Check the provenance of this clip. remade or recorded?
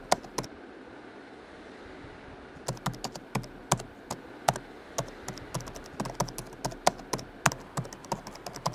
recorded